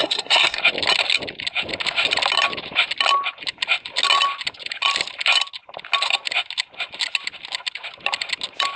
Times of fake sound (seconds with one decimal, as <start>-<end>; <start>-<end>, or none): 0.0-0.6